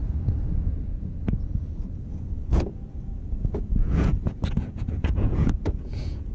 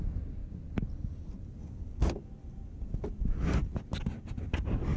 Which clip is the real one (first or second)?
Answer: second